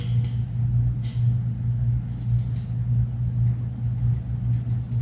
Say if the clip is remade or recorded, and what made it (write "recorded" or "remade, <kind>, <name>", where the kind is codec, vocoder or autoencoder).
recorded